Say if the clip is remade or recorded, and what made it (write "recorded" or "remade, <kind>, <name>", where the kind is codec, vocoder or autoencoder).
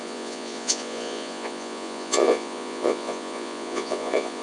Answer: remade, vocoder, Vocos